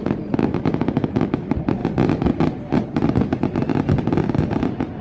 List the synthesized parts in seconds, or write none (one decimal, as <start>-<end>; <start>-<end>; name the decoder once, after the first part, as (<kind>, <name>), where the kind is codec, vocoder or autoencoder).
0.4-1.4 (autoencoder, DAC-VAE)